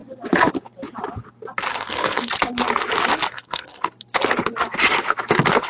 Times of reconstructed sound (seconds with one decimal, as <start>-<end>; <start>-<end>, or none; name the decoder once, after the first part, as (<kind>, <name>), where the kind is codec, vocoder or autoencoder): 1.7-2.3 (codec, SNAC); 3.3-3.9